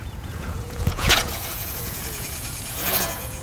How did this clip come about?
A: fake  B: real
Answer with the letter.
A